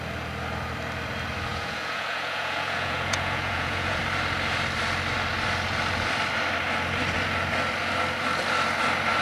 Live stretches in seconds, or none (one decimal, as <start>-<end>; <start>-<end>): 0.0-1.5; 4.0-9.2